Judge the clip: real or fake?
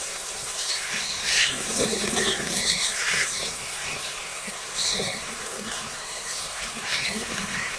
fake